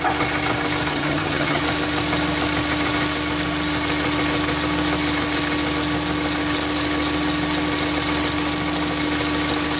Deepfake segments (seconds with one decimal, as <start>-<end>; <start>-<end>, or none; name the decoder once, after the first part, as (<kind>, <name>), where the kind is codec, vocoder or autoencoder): 0.9-1.6 (vocoder, HiFi-GAN)